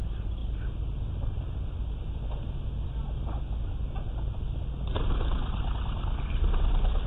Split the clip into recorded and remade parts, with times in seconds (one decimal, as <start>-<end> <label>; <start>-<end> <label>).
0.0-7.1 recorded